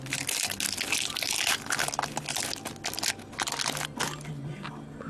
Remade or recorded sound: recorded